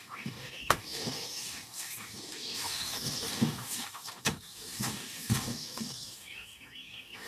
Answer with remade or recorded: remade